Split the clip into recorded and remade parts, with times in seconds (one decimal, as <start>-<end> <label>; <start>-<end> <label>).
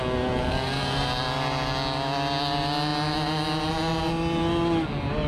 0.0-5.3 recorded